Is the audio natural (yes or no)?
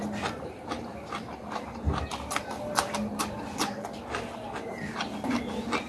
yes